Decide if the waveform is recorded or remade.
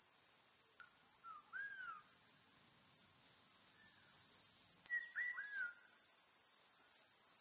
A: recorded